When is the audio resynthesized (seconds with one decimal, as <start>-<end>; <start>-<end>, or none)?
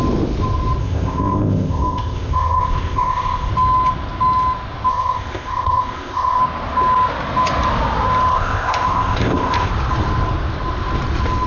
0.8-3.5; 4.9-6.4; 8.3-9.7